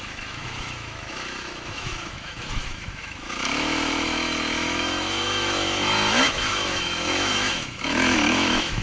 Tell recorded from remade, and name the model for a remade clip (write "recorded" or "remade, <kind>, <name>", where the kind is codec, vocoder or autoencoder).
remade, autoencoder, DAC-VAE